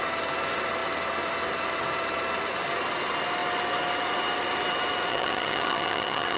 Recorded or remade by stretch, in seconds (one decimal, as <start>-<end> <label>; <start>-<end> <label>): 0.0-5.1 recorded; 5.1-6.4 remade

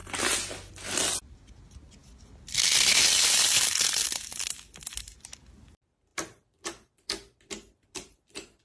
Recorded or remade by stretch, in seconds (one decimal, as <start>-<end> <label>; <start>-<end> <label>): 0.0-6.1 recorded; 6.1-8.6 remade

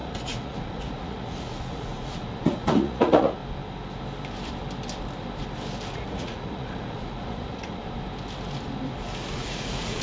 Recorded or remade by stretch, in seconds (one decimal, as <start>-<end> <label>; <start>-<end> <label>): 0.0-3.4 remade; 3.4-5.9 recorded; 5.9-7.8 remade; 7.8-9.3 recorded; 9.3-10.0 remade

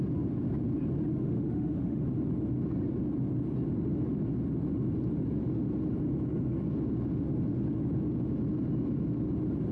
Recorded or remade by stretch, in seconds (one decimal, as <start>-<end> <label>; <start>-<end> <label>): 0.0-1.1 recorded; 1.1-2.0 remade; 2.0-9.7 recorded

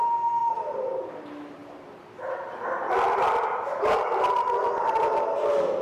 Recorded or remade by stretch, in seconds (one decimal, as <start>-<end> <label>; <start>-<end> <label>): 0.0-0.4 recorded; 0.4-1.1 remade; 1.1-1.6 recorded; 1.6-2.6 remade; 2.6-5.8 recorded

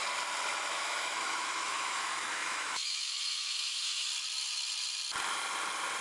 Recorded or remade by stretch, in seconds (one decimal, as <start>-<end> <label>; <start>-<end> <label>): 0.0-0.5 recorded; 0.5-4.1 remade; 4.1-6.0 recorded

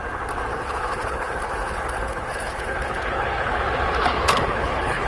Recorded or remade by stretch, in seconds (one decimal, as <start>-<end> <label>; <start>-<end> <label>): 0.0-0.5 recorded; 0.5-3.6 remade; 3.6-4.0 recorded; 4.0-5.1 remade

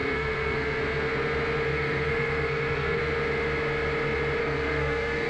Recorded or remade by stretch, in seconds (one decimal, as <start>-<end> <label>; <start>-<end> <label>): 0.0-0.8 remade; 0.8-1.7 recorded; 1.7-3.0 remade; 3.0-4.4 recorded; 4.4-5.3 remade